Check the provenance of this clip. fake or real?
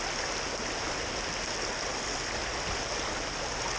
real